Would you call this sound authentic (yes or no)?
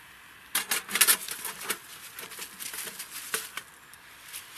yes